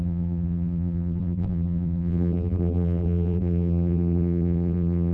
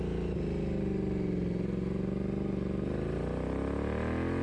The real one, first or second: second